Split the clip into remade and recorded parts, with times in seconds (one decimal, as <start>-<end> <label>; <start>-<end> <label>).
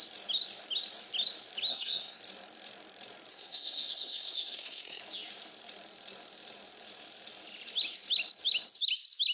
0.0-1.7 recorded; 1.7-2.2 remade; 2.2-3.3 recorded; 3.3-5.0 remade; 5.0-9.3 recorded